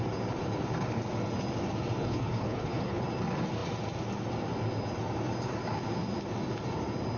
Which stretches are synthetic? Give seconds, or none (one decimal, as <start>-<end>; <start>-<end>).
2.0-3.0